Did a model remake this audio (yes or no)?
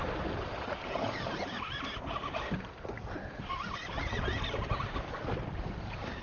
no